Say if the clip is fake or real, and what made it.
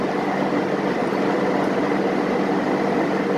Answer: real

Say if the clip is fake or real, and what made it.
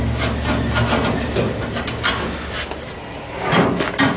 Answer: real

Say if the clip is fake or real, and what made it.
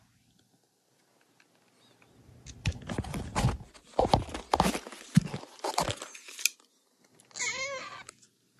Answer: real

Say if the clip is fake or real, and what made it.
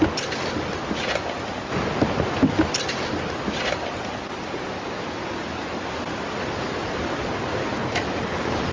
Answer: real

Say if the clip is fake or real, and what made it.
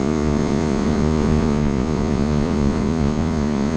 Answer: fake, vocoder, Vocos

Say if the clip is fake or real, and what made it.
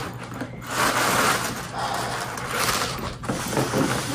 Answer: real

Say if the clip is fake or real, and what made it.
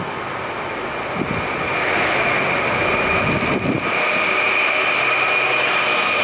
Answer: real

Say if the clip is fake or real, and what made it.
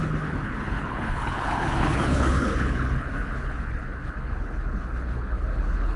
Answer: fake, codec, HILCodec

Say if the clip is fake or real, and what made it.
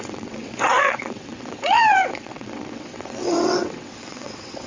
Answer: fake, vocoder, WaveNeXt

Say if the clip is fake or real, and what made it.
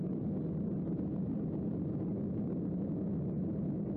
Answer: real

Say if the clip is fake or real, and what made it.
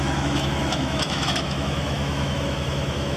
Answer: fake, autoencoder, DAC-VAE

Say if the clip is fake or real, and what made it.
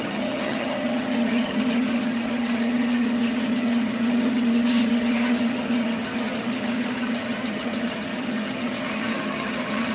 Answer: fake, vocoder, HiFi-GAN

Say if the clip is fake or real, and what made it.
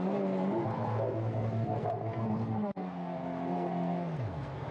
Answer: fake, codec, SNAC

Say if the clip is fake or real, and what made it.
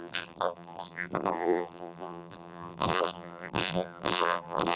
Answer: fake, vocoder, BigVGAN v2